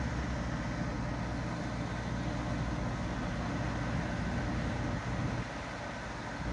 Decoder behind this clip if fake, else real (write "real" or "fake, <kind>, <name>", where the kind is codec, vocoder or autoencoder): real